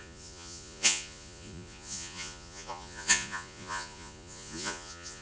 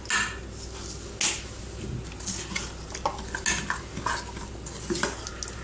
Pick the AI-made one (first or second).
first